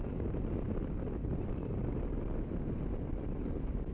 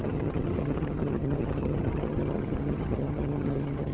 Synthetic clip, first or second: second